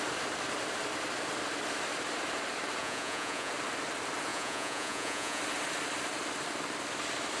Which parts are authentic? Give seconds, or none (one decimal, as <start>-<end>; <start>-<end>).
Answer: 0.0-2.8; 3.5-4.3; 5.4-7.4